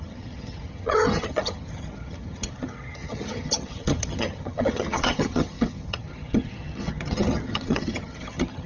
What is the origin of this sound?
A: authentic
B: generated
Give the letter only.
B